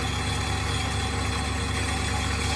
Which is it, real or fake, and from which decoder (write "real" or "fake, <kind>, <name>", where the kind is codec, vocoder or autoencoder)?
real